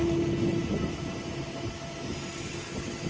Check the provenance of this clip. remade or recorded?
recorded